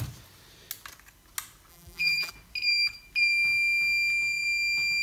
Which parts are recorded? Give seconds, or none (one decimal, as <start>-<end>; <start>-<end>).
0.0-1.7; 2.3-5.0